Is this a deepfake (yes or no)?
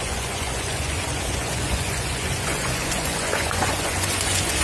yes